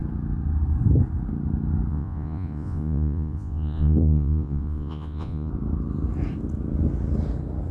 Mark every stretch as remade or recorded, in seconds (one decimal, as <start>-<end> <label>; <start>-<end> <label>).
0.0-1.9 recorded; 1.9-5.5 remade; 5.5-7.7 recorded

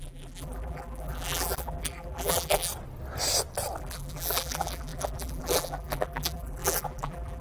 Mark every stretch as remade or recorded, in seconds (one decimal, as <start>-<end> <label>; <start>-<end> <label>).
0.0-2.7 remade; 2.7-3.8 recorded; 3.8-7.4 remade

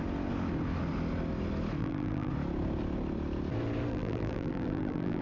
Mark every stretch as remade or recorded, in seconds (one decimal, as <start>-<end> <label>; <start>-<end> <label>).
0.0-1.8 recorded; 1.8-2.3 remade; 2.3-3.9 recorded; 3.9-5.2 remade

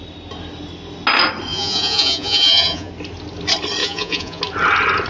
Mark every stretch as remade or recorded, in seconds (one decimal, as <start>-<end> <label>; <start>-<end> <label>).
0.0-1.5 recorded; 1.5-2.9 remade; 2.9-3.8 recorded; 3.8-4.4 remade; 4.4-5.1 recorded

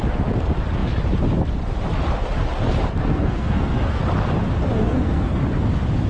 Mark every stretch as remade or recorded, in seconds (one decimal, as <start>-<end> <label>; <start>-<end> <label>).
0.0-3.0 recorded; 3.0-4.0 remade; 4.0-4.8 recorded; 4.8-5.4 remade; 5.4-6.1 recorded